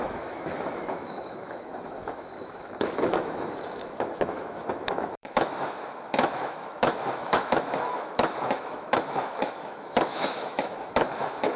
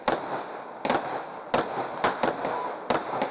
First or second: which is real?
second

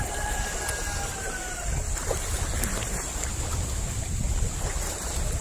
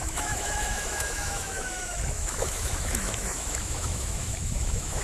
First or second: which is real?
first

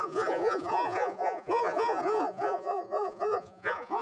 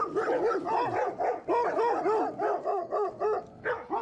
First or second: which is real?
second